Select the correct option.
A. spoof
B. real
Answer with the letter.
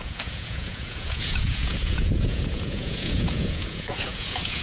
A